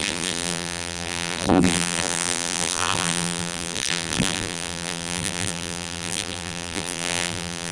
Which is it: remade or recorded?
remade